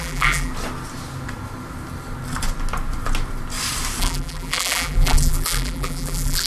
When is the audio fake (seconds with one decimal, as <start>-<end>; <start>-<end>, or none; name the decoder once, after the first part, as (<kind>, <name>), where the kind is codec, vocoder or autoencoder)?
0.0-0.5 (vocoder, BigVGAN v2); 4.0-6.5